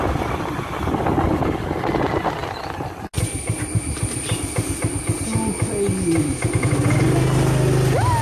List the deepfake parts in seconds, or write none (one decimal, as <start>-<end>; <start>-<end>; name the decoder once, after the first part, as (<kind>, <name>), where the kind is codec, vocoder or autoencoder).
none